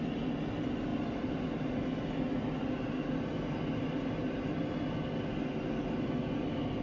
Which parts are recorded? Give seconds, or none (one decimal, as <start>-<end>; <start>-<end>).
0.0-6.8